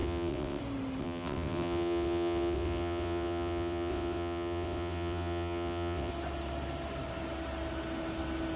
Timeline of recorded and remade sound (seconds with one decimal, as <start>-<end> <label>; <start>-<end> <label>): 0.0-0.6 remade; 0.6-1.0 recorded; 1.0-6.1 remade; 6.1-8.6 recorded